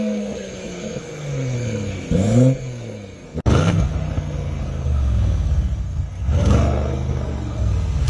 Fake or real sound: fake